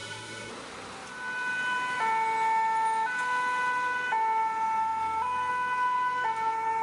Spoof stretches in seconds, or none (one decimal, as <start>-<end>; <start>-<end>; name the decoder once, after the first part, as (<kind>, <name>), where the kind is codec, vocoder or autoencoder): 0.0-0.5 (codec, SNAC)